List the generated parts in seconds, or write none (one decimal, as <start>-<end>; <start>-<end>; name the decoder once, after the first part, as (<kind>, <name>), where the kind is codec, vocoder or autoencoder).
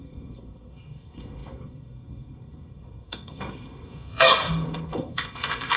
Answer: 0.0-5.8 (codec, SNAC)